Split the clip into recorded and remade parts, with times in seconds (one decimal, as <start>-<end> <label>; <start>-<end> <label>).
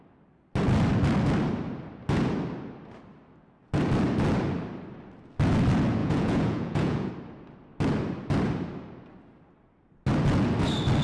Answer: 0.0-6.0 recorded; 6.0-7.1 remade; 7.1-11.0 recorded